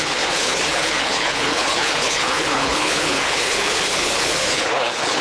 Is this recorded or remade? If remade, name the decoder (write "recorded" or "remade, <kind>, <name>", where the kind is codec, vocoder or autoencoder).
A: remade, codec, HILCodec